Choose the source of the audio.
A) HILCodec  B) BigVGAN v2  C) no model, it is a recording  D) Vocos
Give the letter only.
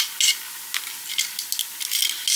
C